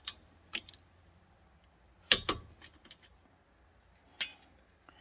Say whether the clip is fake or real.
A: real